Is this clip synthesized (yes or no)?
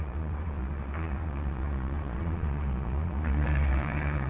yes